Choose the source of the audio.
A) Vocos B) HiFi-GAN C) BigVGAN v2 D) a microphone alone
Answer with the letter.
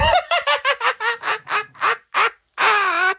D